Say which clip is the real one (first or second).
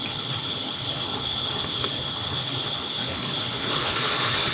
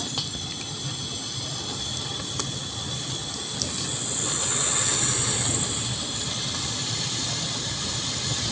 second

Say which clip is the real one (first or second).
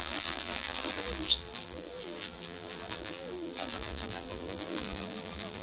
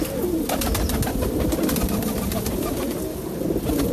second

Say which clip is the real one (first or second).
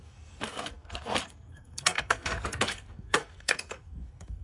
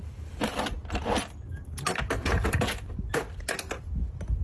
second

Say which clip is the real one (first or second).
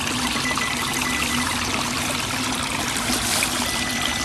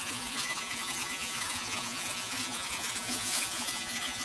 first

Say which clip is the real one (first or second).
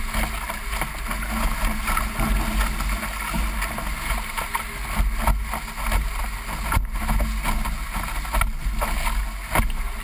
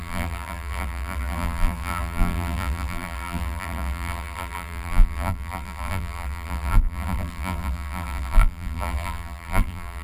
first